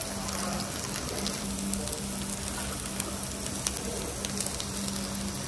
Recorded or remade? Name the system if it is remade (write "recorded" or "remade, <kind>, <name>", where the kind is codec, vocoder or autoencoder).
recorded